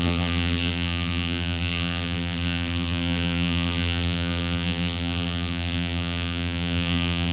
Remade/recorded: remade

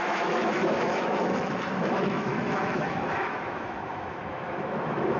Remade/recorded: remade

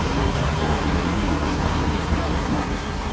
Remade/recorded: remade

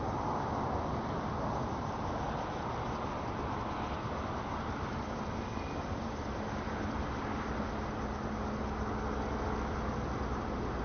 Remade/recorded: recorded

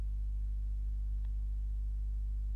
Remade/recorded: recorded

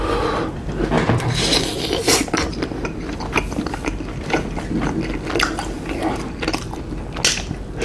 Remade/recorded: recorded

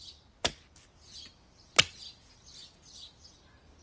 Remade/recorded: recorded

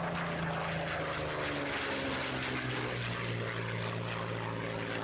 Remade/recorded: recorded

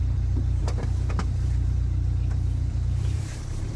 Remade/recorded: remade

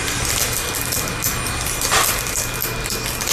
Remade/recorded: remade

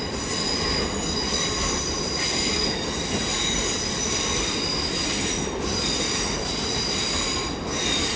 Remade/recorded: recorded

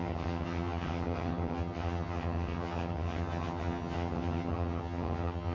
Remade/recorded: remade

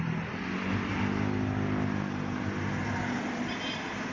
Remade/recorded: recorded